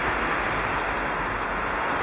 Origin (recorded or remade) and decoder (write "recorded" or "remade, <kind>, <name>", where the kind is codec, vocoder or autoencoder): recorded